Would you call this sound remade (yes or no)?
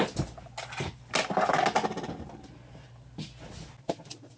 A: no